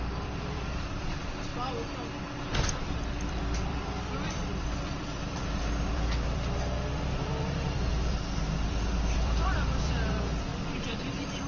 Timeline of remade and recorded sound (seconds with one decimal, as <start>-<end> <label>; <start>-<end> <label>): 0.0-1.5 remade; 1.5-2.8 recorded; 2.8-11.5 remade